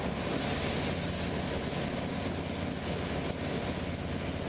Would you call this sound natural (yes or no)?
yes